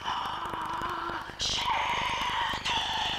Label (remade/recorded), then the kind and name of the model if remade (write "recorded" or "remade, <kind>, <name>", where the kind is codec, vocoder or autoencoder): recorded